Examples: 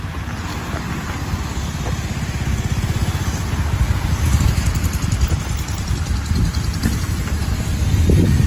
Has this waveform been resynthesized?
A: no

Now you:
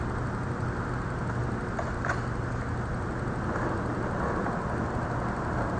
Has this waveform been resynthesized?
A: no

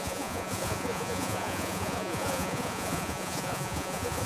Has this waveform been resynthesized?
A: yes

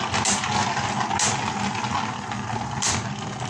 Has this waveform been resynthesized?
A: no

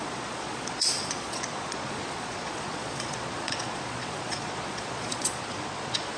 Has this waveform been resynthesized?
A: yes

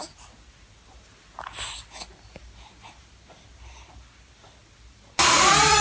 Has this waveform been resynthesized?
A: no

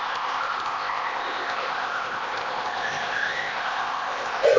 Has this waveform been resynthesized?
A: yes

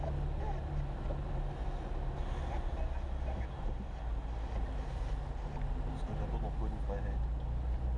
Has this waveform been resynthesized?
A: no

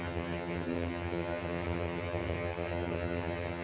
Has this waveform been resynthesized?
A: yes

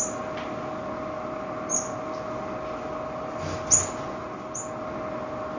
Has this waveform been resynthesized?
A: no